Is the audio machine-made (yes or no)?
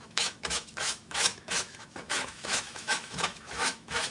yes